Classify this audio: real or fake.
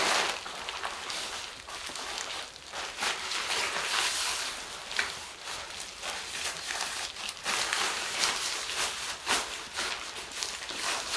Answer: real